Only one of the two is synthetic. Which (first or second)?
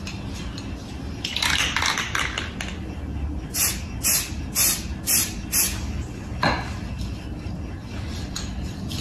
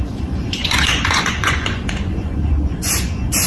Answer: second